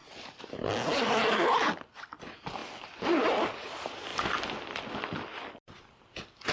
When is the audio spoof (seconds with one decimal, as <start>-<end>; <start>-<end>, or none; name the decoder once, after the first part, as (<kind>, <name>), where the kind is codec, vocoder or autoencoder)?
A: none